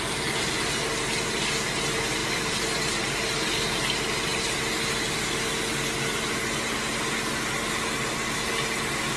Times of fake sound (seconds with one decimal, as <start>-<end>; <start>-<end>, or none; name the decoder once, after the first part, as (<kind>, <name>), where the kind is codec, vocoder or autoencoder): 2.2-3.8 (vocoder, BigVGAN v2)